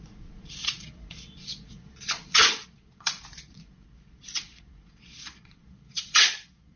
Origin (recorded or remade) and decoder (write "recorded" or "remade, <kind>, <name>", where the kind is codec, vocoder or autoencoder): remade, vocoder, Vocos